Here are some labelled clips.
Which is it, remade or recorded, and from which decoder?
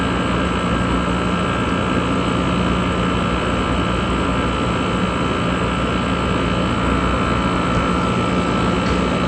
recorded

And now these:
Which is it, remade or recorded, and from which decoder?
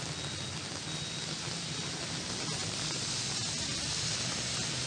recorded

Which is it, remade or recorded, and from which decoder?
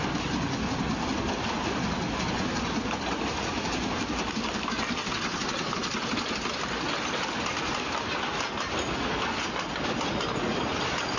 recorded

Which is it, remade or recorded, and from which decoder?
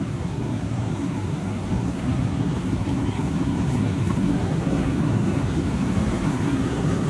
remade, codec, SNAC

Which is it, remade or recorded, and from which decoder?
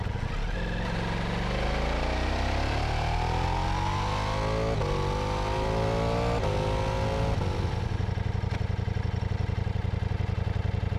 recorded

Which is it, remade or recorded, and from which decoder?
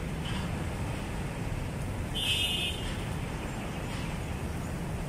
remade, vocoder, BigVGAN v2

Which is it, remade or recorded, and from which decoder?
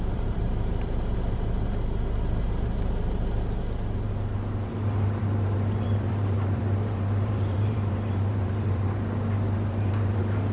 remade, vocoder, BigVGAN v2